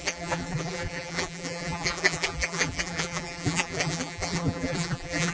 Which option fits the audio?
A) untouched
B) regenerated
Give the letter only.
B